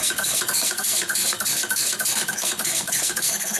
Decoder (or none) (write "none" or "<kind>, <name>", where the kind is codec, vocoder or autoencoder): codec, SNAC